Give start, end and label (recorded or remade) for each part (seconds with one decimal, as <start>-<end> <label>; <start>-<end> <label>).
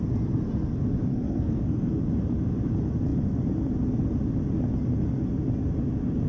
0.0-1.1 recorded; 1.1-1.9 remade; 1.9-6.3 recorded